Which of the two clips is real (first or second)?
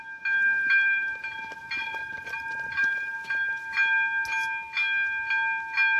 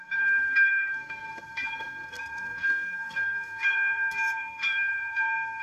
first